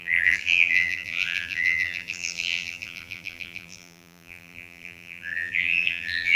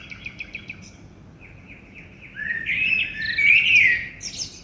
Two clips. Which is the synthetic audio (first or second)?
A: first